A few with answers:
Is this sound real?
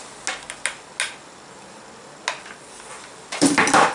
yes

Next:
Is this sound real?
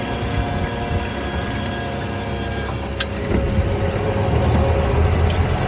yes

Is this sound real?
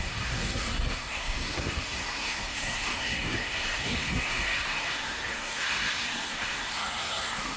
no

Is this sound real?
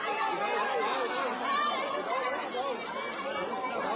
yes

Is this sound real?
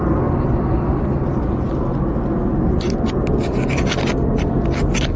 yes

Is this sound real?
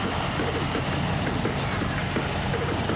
yes